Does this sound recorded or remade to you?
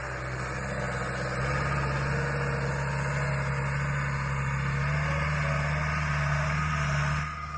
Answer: recorded